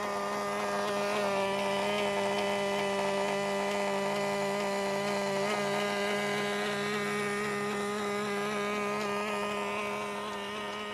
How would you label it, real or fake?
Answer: real